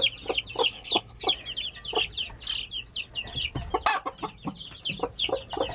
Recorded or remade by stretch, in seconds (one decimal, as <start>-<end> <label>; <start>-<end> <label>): 0.0-0.6 recorded; 0.6-1.2 remade; 1.2-5.7 recorded